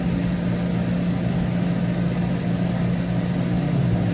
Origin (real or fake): real